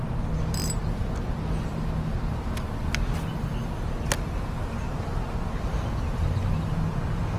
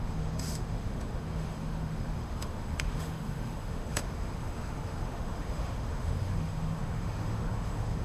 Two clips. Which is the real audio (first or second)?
first